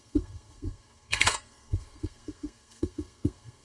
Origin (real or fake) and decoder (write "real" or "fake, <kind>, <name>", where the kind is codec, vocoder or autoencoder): fake, codec, SNAC